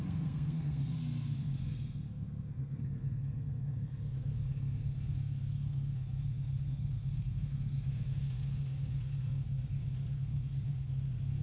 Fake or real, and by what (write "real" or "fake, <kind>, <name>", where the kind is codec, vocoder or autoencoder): fake, codec, SNAC